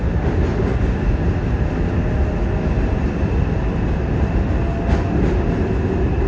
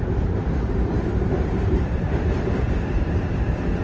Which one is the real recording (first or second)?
first